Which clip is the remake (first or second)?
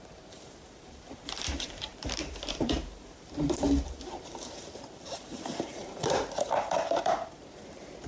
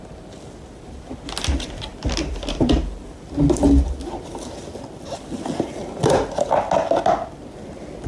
first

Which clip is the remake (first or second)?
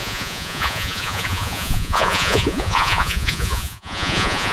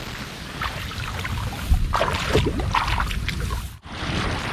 first